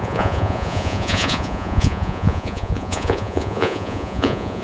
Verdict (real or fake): fake